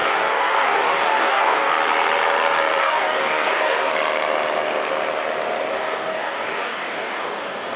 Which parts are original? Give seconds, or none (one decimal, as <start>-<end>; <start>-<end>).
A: 1.7-2.8; 3.9-5.7

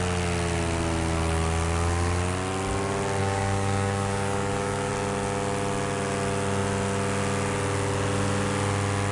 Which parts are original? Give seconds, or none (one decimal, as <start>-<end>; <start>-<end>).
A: 0.0-3.2; 4.9-9.1

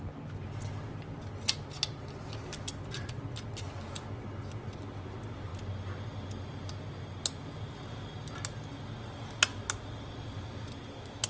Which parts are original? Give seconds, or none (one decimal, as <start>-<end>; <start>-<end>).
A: 0.0-11.3

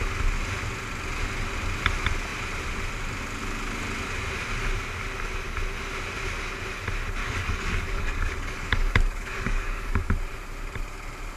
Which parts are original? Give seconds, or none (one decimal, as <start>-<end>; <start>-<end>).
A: 0.0-7.2; 10.1-11.4